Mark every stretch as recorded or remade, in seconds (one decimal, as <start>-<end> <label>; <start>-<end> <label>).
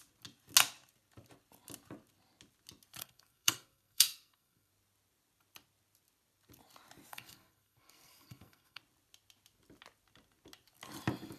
0.0-3.0 recorded; 3.0-4.7 remade; 4.7-7.1 recorded; 7.1-8.8 remade; 8.8-11.4 recorded